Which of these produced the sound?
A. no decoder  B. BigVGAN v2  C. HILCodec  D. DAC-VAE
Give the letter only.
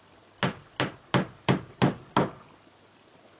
A